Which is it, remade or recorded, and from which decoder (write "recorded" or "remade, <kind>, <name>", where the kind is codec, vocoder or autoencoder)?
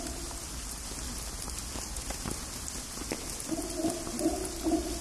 recorded